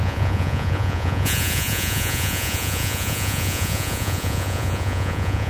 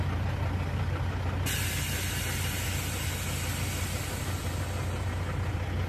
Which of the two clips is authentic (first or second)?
second